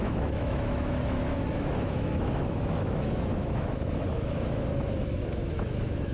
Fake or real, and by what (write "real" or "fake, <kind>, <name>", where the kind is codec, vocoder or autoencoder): fake, autoencoder, DAC-VAE